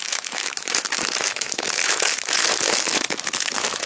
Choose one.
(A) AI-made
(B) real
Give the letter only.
A